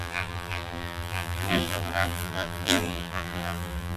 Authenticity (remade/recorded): remade